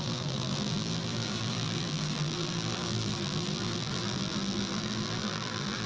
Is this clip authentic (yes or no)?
no